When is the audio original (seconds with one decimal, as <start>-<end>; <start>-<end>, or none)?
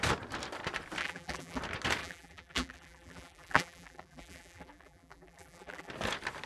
0.0-1.0; 1.6-2.0; 5.9-6.5